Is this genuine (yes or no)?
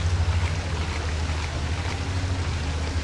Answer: yes